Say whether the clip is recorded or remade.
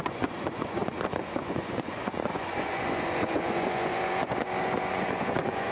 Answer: remade